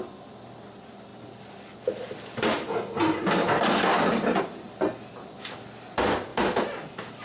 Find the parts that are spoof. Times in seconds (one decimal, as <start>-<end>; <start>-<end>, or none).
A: none